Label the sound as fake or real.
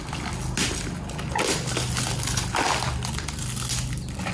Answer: real